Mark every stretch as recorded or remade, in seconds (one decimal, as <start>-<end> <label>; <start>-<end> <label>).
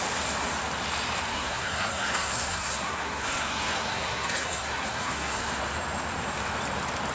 0.0-1.3 recorded; 1.3-5.6 remade; 5.6-7.1 recorded